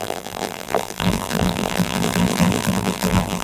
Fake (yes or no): yes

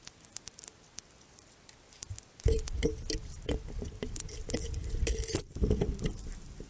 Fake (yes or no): no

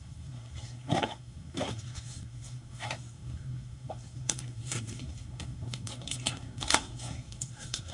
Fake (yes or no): yes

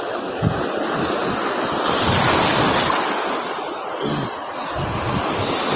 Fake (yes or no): no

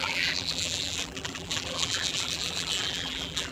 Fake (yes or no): yes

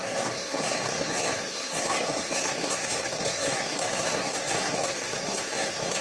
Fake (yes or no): yes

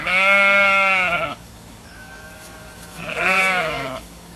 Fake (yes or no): yes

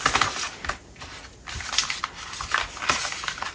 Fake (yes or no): no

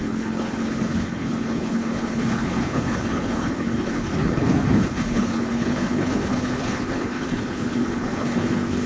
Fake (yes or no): yes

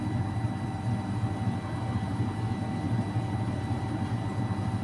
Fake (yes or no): no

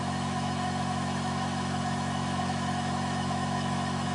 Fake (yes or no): yes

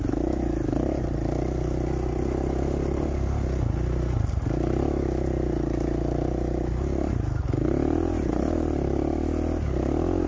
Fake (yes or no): no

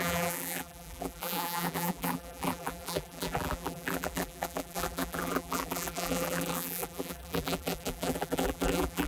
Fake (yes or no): yes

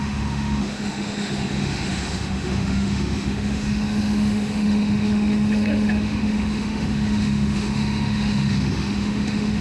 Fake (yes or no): yes